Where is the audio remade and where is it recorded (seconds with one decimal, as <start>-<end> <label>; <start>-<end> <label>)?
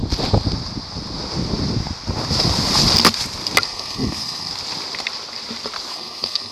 0.0-3.6 recorded; 3.6-4.5 remade; 4.5-5.9 recorded; 5.9-6.5 remade